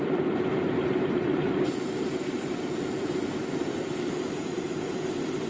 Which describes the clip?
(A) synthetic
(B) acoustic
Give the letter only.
A